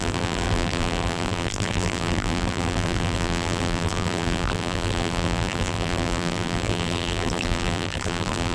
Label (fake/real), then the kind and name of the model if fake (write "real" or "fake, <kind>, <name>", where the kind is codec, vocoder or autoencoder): fake, vocoder, BigVGAN v2